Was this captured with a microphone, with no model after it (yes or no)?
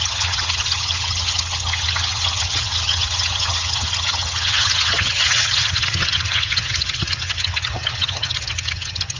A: no